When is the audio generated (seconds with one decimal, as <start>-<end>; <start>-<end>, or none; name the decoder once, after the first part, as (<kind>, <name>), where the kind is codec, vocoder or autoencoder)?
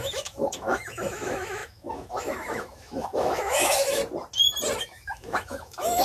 0.0-4.0 (autoencoder, DAC-VAE); 4.8-6.0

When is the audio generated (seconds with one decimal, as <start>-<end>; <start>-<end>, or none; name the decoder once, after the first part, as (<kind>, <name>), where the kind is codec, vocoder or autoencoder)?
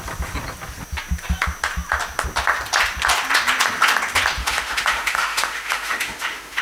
4.4-6.6 (autoencoder, DAC-VAE)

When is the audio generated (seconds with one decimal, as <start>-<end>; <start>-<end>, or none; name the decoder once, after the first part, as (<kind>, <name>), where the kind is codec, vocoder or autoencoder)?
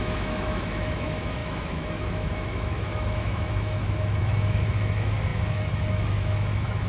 0.0-6.9 (autoencoder, DAC-VAE)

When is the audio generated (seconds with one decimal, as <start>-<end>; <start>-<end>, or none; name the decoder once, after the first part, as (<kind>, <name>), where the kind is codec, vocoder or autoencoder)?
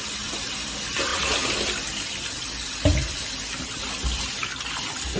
none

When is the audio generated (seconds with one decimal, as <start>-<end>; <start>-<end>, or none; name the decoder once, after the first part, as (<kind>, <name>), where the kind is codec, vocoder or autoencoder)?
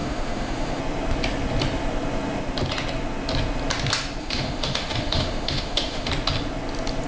0.0-0.8 (autoencoder, DAC-VAE); 4.2-6.1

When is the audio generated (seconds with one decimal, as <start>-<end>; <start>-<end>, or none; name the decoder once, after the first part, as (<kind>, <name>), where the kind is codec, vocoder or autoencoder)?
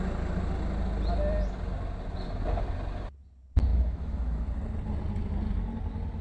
3.7-4.5 (autoencoder, DAC-VAE)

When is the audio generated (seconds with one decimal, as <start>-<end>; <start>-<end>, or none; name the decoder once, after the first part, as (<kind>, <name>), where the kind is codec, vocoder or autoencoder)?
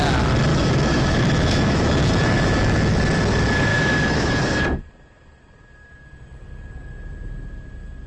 0.5-3.0 (autoencoder, DAC-VAE); 3.7-4.4